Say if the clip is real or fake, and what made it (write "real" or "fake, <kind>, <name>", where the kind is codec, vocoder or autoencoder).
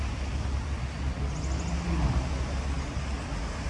real